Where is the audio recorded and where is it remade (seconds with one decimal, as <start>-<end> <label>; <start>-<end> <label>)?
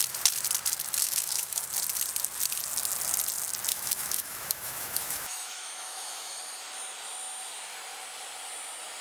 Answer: 0.0-1.0 recorded; 1.0-1.6 remade; 1.6-3.7 recorded; 3.7-6.4 remade; 6.4-9.0 recorded